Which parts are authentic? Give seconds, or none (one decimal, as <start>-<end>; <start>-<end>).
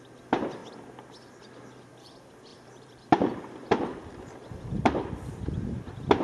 0.6-1.6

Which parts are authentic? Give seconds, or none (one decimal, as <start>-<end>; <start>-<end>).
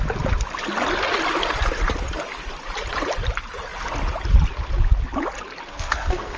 0.0-5.7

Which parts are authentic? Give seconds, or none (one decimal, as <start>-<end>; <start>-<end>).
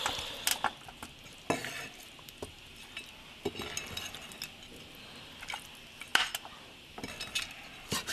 0.0-8.1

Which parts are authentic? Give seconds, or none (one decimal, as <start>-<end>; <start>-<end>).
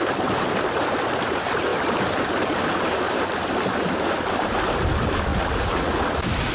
0.0-5.3; 5.9-6.5